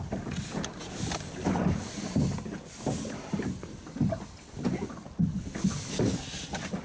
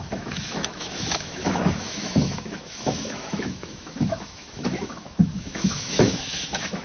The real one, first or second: first